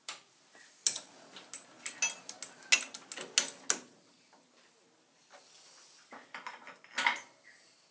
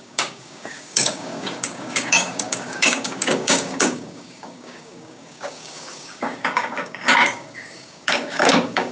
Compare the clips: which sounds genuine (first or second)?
first